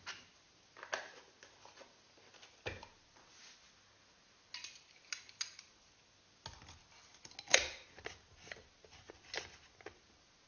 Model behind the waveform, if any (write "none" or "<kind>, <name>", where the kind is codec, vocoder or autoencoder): none